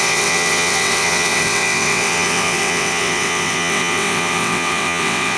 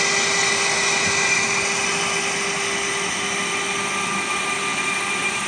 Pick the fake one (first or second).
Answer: first